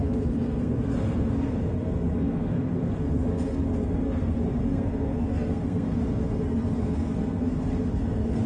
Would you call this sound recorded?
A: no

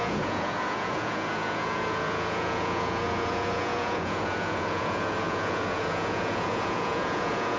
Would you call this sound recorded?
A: no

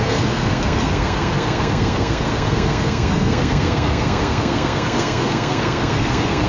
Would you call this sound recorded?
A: no